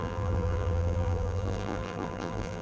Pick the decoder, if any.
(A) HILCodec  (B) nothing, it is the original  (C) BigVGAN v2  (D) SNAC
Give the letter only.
C